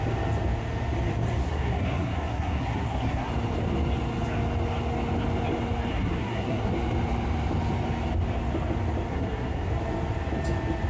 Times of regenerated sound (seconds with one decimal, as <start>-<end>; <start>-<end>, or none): 1.4-3.3; 5.9-6.7; 9.1-9.7